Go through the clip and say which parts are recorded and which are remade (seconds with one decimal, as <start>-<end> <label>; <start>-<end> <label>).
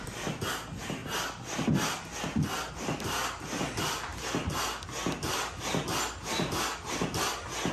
0.0-7.7 recorded